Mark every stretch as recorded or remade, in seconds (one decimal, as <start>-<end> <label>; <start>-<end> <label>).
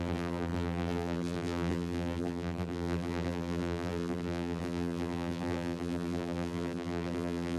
0.0-7.6 remade